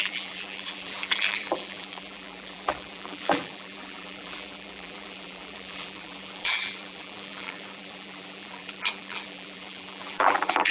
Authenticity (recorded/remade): remade